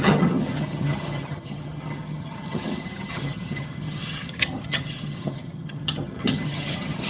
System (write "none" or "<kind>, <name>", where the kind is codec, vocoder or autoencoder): vocoder, HiFi-GAN